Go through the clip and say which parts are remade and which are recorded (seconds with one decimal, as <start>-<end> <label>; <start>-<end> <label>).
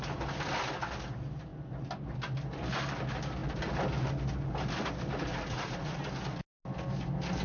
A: 0.0-5.3 recorded; 5.3-5.9 remade; 5.9-7.4 recorded